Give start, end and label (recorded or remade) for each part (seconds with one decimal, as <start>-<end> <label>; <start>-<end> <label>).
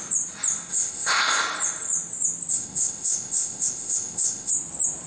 0.0-0.7 recorded; 0.7-1.4 remade; 1.4-2.5 recorded; 2.5-4.5 remade; 4.5-5.1 recorded